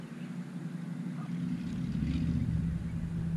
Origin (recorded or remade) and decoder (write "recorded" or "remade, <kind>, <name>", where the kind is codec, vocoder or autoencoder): recorded